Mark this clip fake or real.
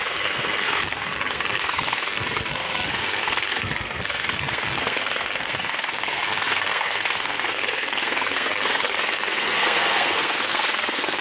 fake